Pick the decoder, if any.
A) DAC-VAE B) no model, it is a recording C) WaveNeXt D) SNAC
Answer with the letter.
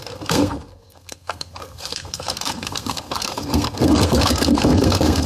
D